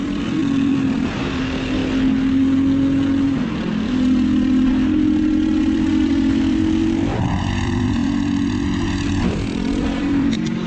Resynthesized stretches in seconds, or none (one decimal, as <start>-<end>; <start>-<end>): 0.0-1.8; 5.6-8.0; 9.1-10.7